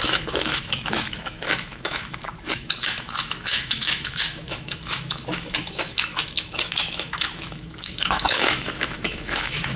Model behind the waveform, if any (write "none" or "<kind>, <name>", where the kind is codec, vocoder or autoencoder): autoencoder, DAC-VAE